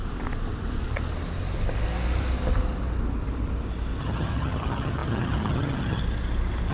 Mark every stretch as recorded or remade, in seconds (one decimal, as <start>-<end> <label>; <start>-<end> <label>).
0.0-4.0 recorded; 4.0-6.0 remade; 6.0-6.7 recorded